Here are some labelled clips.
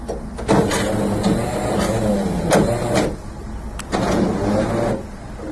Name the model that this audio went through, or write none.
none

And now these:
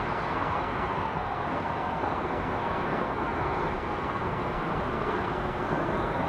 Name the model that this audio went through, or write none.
codec, SNAC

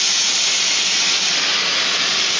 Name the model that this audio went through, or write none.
none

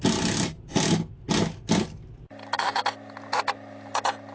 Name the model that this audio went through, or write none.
none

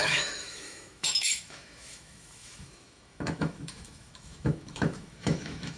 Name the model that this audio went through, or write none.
autoencoder, DAC-VAE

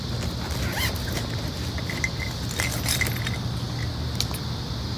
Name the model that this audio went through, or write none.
none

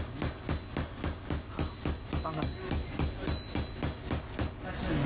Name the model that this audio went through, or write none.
none